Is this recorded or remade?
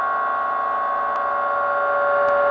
recorded